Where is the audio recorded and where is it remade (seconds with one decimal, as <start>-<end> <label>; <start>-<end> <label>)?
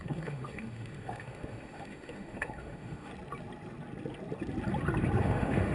0.0-3.1 remade; 3.1-5.2 recorded; 5.2-5.7 remade